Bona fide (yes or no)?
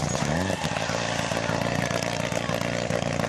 yes